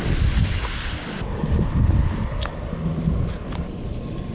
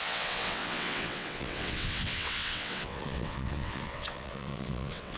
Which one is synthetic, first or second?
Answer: second